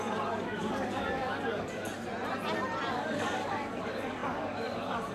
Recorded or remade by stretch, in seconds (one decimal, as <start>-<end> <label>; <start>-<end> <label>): 0.0-1.8 remade; 1.8-2.9 recorded; 2.9-5.1 remade

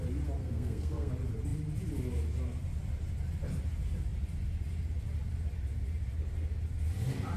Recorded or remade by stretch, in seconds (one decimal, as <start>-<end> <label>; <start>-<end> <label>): 0.0-0.4 recorded; 0.4-1.1 remade; 1.1-7.4 recorded